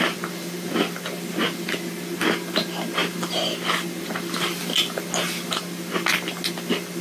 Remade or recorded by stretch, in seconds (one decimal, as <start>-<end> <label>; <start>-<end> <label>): 0.0-7.0 recorded